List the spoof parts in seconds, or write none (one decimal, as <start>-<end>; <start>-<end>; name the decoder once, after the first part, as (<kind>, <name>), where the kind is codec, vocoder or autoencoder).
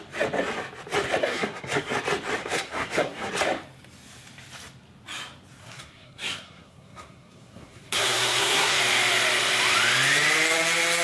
1.2-1.9 (codec, SNAC); 2.4-3.3; 5.6-8.8